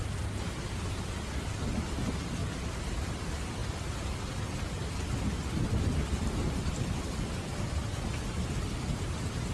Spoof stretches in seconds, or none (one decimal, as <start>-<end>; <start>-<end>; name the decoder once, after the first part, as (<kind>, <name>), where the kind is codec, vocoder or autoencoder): none

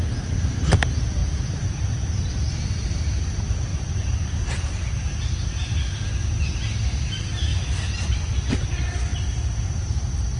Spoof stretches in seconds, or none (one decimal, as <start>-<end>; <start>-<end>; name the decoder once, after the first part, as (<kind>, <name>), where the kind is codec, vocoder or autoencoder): 1.2-1.8 (vocoder, BigVGAN v2); 3.7-4.8